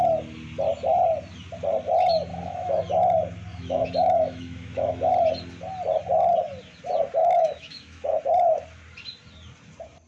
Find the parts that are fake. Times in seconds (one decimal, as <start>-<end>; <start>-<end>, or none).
2.3-2.8; 3.5-5.1; 7.2-8.2

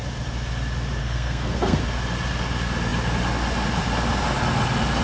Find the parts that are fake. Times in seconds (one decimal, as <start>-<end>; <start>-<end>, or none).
1.0-1.8

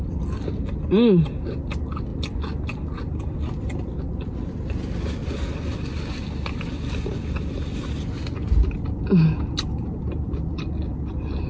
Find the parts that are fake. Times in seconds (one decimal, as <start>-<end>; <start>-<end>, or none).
none

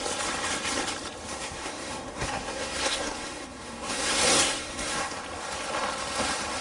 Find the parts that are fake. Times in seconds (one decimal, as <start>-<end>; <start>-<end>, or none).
1.3-5.2

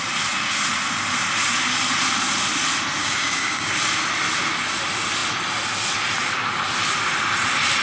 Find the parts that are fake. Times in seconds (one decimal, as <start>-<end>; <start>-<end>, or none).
3.0-3.7

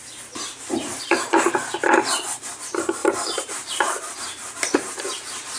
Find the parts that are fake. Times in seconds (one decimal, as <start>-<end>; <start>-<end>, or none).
0.7-1.3; 3.0-3.8